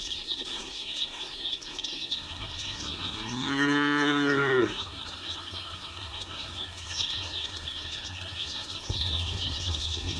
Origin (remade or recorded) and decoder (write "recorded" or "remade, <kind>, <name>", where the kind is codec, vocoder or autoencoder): remade, codec, SNAC